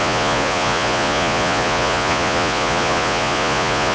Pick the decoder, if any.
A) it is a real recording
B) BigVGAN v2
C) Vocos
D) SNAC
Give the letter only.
C